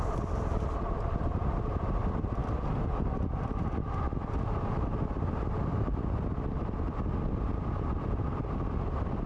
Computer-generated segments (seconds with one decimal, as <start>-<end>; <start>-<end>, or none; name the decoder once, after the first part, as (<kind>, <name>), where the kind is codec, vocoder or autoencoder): 0.0-2.4 (vocoder, BigVGAN v2); 5.3-5.9; 7.3-9.3